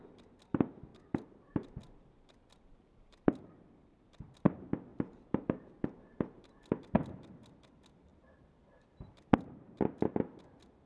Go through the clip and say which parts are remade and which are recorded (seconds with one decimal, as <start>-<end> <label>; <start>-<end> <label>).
0.0-0.9 recorded; 0.9-1.8 remade; 1.8-2.7 recorded; 2.7-3.3 remade; 3.3-4.9 recorded; 4.9-6.5 remade; 6.5-10.9 recorded